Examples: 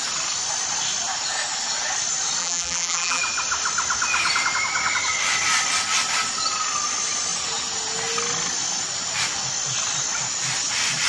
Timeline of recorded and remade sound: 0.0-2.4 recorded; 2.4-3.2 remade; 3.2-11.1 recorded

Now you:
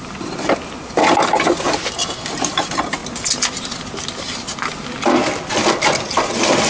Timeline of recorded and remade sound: 0.0-6.7 recorded

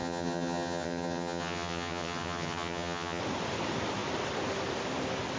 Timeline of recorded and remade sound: 0.0-3.2 remade; 3.2-5.4 recorded

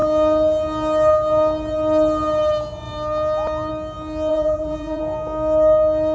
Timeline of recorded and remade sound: 0.0-4.3 recorded; 4.3-5.0 remade; 5.0-6.1 recorded

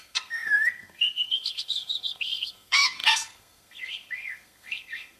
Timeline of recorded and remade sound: 0.0-5.2 remade

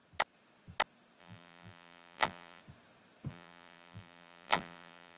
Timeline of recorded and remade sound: 0.0-1.2 recorded; 1.2-2.6 remade; 2.6-3.3 recorded; 3.3-5.2 remade

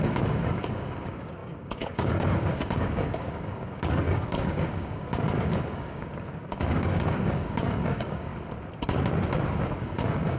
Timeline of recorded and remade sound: 0.0-8.3 remade; 8.3-9.8 recorded; 9.8-10.4 remade

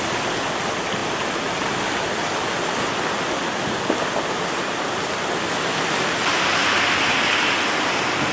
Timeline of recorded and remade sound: 0.0-8.3 recorded